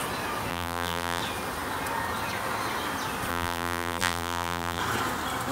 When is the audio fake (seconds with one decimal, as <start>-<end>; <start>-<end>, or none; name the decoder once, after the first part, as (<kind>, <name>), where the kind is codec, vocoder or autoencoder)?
0.5-1.2 (vocoder, BigVGAN v2); 3.3-4.8